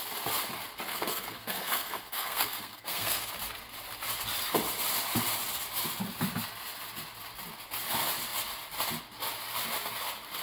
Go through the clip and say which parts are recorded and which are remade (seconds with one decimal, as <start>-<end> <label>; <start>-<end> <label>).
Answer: 0.0-0.9 recorded; 0.9-3.3 remade; 3.3-10.4 recorded